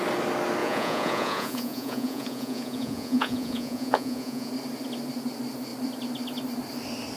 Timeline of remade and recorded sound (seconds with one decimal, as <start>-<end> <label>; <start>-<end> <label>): 0.0-0.6 recorded; 0.6-4.5 remade; 4.5-7.2 recorded